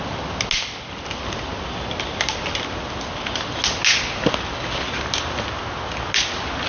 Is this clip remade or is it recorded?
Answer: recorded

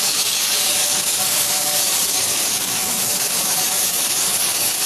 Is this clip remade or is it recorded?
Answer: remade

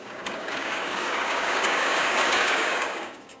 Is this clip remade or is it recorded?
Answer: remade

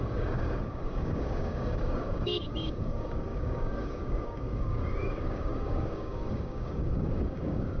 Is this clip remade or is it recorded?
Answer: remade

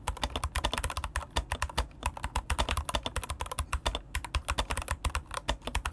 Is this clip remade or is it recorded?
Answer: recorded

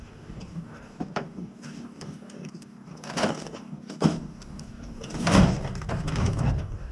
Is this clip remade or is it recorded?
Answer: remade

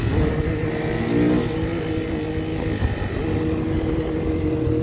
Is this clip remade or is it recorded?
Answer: recorded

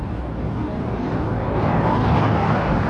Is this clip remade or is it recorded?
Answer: remade